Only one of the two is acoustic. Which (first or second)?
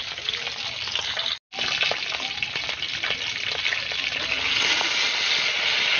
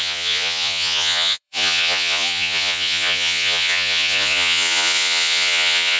first